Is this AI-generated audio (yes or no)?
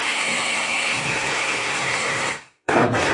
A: yes